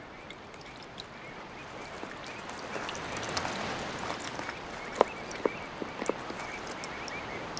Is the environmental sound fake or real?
real